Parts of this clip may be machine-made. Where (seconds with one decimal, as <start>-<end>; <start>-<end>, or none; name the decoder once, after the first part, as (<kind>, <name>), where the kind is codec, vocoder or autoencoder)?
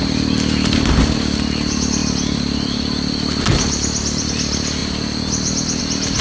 none